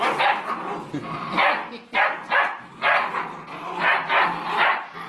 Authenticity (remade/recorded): recorded